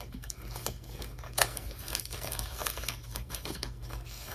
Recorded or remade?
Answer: remade